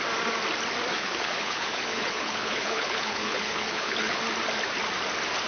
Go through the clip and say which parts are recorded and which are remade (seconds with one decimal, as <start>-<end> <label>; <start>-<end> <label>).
0.0-0.9 recorded; 0.9-4.2 remade; 4.2-5.5 recorded